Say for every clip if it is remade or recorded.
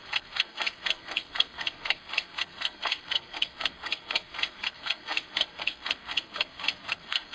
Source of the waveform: remade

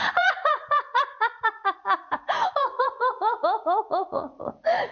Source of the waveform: remade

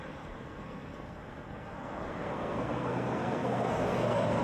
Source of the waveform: remade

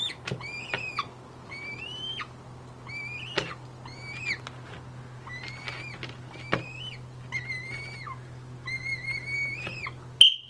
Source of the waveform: recorded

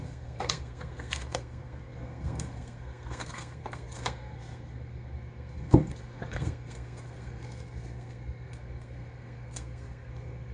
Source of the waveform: remade